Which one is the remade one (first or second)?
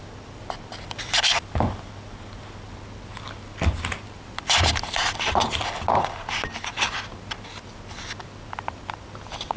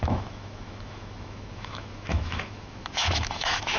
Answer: second